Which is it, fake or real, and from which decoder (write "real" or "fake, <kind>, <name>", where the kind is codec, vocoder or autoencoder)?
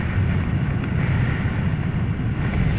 real